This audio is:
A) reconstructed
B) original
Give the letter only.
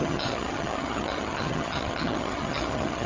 A